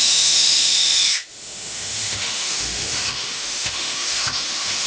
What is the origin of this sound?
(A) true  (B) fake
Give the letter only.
B